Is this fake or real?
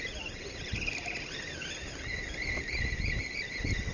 real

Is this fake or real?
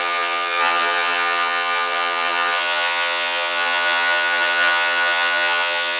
fake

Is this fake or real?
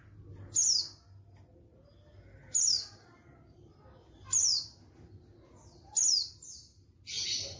real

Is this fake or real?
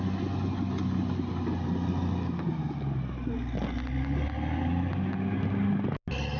real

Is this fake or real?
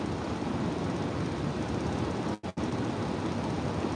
real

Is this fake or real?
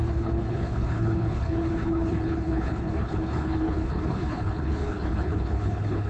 fake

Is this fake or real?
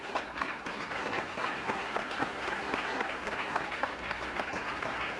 fake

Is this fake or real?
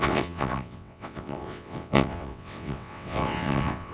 fake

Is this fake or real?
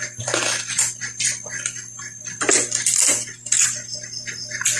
real